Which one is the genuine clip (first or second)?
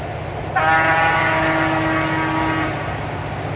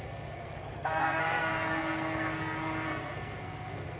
first